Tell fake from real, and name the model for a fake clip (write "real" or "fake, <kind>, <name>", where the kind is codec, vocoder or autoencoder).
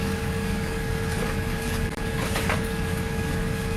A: fake, codec, DAC